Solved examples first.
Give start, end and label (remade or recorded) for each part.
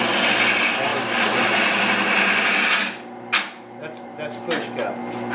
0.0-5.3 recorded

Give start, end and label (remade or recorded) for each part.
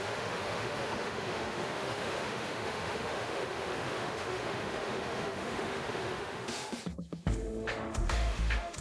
0.0-8.8 remade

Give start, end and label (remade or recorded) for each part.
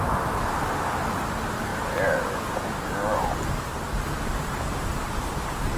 0.0-1.7 recorded; 1.7-5.2 remade; 5.2-5.8 recorded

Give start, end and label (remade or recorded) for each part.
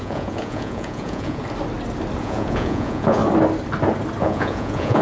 0.0-1.4 remade; 1.4-2.2 recorded; 2.2-3.2 remade; 3.2-4.2 recorded; 4.2-5.0 remade